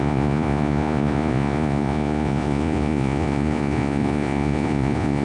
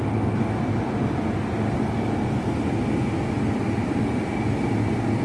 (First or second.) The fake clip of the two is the first